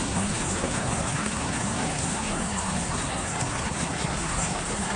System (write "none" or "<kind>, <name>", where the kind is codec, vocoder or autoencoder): codec, SNAC